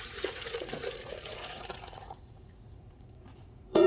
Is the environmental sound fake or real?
fake